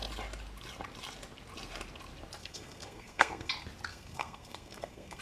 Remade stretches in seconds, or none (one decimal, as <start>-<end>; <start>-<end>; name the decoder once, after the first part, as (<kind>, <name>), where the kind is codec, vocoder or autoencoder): 2.4-3.5 (codec, SNAC); 3.9-5.2